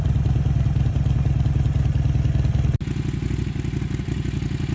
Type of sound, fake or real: real